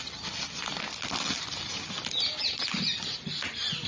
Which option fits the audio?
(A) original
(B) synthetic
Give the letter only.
A